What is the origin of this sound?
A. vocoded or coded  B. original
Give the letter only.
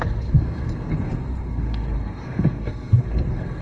A